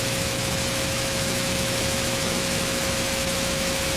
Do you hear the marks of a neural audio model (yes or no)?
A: yes